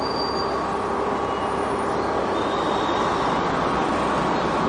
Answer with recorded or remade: recorded